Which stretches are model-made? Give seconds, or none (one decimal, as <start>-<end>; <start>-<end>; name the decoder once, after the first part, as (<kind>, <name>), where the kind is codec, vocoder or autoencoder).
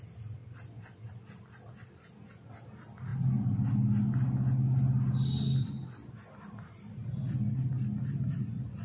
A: none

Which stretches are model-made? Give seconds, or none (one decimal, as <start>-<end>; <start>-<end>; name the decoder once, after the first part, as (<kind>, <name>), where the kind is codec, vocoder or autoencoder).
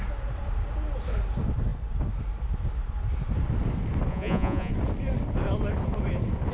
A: 4.1-4.7 (vocoder, Vocos)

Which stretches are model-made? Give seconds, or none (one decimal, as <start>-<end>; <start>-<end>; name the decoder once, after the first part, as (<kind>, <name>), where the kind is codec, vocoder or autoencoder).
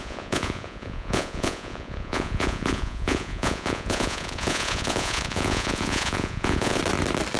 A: 0.0-6.8 (vocoder, Vocos)